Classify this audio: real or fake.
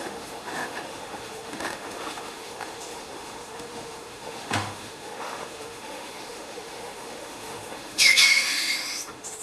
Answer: fake